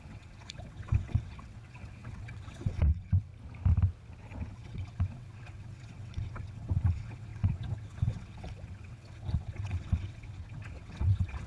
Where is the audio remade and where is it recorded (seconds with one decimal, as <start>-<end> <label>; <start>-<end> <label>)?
0.0-3.3 remade; 3.3-4.5 recorded; 4.5-11.5 remade